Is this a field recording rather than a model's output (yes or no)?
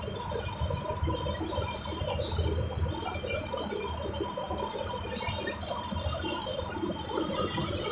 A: yes